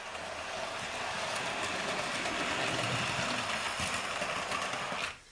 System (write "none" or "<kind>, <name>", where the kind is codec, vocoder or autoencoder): none